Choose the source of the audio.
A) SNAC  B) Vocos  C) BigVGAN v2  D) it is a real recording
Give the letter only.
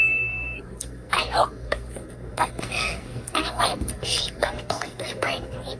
A